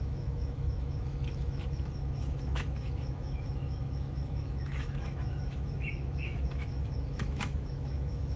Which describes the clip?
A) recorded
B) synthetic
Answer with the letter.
B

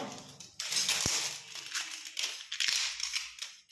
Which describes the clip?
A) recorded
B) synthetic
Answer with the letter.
A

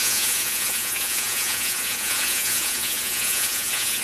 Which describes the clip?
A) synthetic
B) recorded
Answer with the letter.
A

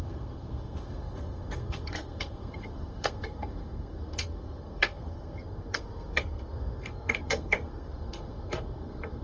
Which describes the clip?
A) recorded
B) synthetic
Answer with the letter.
B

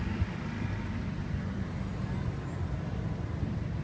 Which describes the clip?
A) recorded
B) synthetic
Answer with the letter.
A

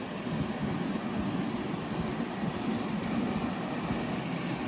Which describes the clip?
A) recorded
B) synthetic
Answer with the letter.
A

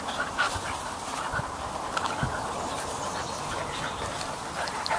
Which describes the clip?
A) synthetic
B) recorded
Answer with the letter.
B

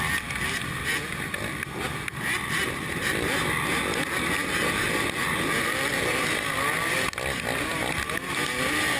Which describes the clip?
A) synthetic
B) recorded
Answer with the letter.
B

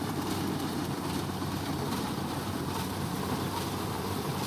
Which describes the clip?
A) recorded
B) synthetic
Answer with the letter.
B